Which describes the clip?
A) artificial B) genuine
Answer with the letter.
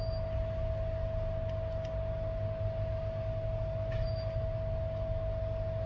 B